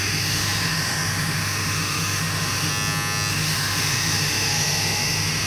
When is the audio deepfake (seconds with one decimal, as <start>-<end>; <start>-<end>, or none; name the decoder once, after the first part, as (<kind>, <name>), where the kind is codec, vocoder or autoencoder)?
0.0-2.7 (autoencoder, DAC-VAE); 3.3-5.5